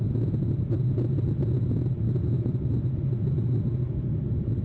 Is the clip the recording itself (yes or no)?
yes